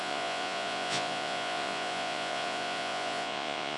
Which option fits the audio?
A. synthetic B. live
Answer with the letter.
A